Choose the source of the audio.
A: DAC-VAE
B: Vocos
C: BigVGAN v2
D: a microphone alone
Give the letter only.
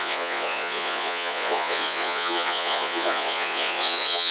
B